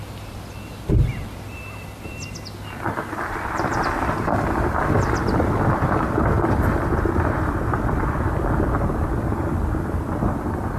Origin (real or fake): fake